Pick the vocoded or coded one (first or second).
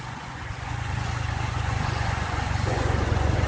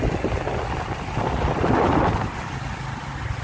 first